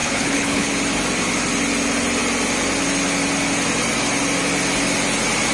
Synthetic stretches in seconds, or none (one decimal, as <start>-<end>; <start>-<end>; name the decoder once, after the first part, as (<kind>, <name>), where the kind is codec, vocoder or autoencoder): 0.0-0.7 (codec, HILCodec)